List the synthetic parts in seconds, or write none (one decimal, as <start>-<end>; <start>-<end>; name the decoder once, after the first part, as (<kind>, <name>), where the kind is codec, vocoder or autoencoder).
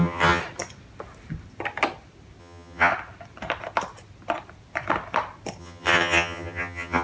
0.0-0.4 (vocoder, HiFi-GAN); 2.4-2.9; 5.6-7.0